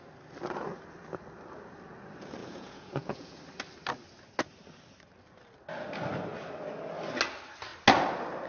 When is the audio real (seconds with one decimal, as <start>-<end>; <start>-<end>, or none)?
0.0-2.4; 3.4-8.5